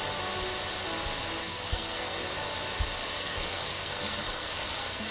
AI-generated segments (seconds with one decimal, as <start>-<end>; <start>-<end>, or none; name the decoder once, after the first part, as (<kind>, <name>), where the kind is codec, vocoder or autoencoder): 1.4-2.2 (codec, SNAC); 3.0-5.1